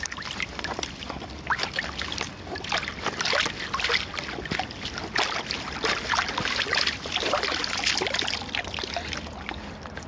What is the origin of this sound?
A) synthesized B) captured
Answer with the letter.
B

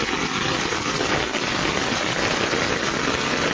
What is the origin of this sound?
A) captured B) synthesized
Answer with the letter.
A